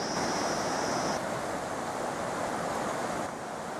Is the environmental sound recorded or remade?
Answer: recorded